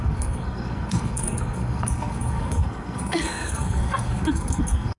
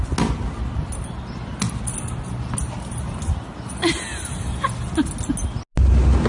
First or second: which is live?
second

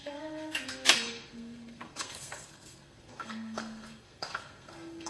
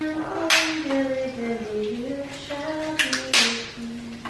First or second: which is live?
second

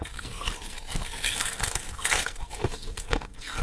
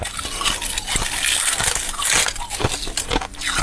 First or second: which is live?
second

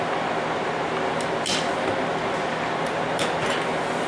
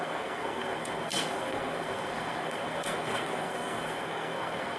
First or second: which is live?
first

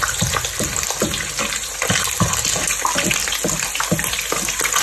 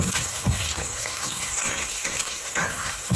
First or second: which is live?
first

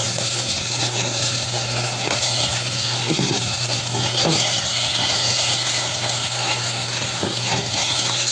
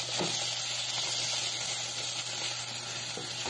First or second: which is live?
second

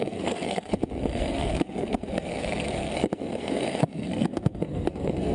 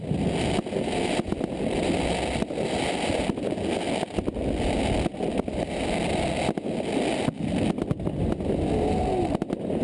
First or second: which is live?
second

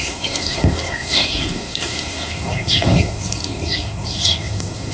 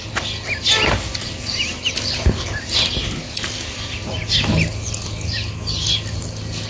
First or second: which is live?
second